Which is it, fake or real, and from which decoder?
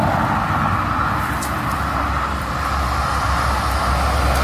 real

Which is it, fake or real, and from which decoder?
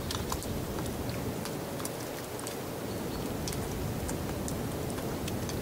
real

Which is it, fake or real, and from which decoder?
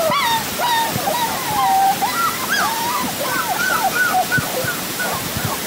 real